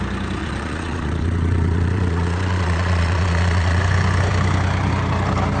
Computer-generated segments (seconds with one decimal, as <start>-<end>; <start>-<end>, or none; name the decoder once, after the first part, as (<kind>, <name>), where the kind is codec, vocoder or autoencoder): 0.4-3.8 (vocoder, Vocos)